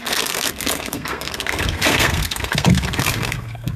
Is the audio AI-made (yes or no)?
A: yes